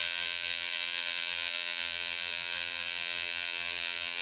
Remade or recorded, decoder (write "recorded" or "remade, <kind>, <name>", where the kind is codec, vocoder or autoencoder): remade, vocoder, BigVGAN v2